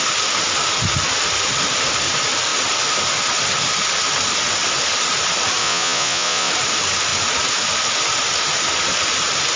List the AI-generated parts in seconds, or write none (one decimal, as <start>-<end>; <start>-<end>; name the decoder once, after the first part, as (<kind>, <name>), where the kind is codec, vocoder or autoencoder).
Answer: 5.6-6.5 (vocoder, Vocos)

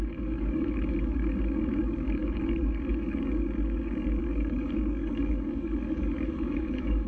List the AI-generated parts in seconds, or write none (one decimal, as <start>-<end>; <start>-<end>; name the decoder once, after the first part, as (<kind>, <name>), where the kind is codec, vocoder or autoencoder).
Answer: 0.0-7.1 (codec, DAC)

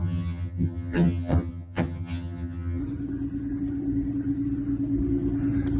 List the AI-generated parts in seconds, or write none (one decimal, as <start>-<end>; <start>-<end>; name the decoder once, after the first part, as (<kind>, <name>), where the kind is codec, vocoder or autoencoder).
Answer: 0.0-2.8 (vocoder, HiFi-GAN)

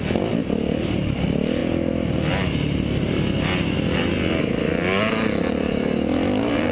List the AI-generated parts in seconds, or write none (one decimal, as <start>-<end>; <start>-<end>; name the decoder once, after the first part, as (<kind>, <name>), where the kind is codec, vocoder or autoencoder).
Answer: none